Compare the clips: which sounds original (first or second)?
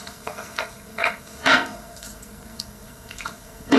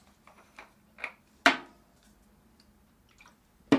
second